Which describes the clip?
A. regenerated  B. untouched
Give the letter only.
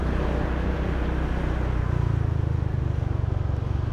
B